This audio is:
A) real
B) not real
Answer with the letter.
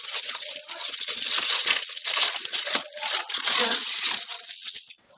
B